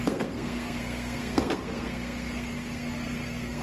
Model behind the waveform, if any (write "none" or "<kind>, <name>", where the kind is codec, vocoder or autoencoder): codec, SNAC